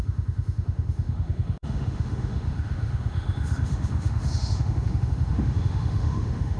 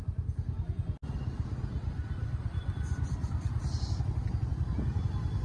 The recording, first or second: second